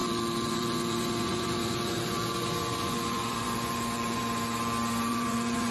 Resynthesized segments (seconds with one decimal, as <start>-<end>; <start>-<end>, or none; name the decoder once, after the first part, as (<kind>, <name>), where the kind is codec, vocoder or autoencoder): 0.0-4.2 (vocoder, Vocos); 5.1-5.7

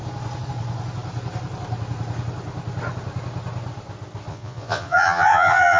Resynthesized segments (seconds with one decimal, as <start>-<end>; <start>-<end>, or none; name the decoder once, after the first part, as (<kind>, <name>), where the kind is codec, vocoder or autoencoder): 4.3-5.8 (vocoder, Vocos)

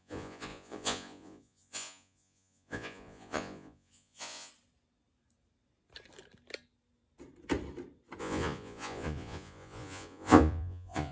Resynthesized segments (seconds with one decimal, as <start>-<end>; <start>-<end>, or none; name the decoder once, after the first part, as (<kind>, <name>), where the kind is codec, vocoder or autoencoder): 0.0-4.5 (vocoder, Vocos); 8.2-11.1

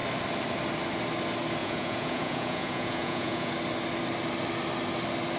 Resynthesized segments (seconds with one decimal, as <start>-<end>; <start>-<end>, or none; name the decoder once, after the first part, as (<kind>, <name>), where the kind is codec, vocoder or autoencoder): 1.6-3.5 (vocoder, Vocos)

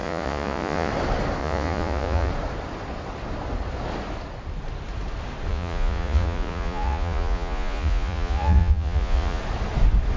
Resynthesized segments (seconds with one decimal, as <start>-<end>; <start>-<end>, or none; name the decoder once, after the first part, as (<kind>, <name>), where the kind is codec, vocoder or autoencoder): 0.0-0.9 (vocoder, Vocos); 1.4-2.3; 5.5-9.4